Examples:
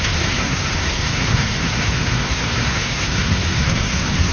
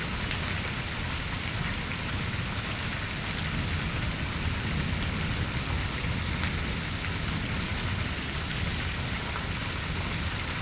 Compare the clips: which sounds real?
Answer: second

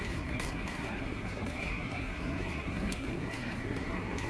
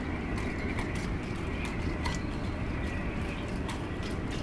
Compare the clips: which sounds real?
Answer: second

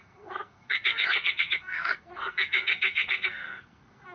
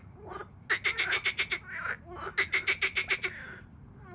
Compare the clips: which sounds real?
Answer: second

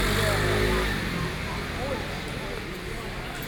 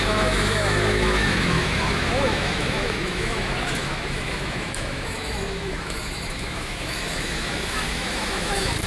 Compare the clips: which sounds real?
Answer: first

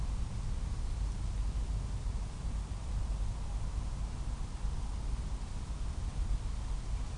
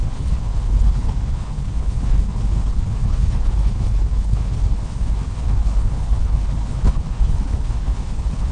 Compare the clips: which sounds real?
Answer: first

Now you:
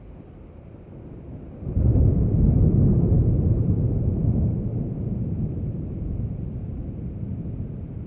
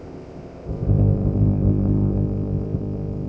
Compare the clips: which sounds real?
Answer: first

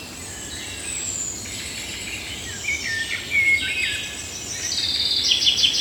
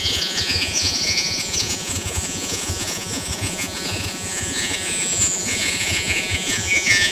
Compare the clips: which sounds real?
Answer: first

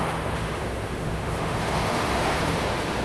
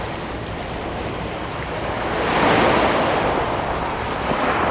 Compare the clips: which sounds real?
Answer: second